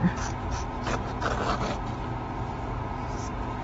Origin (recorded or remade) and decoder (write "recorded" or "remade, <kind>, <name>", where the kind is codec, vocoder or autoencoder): recorded